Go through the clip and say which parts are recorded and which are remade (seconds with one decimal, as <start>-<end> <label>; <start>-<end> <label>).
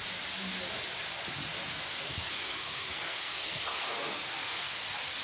0.0-1.7 recorded; 1.7-4.8 remade; 4.8-5.2 recorded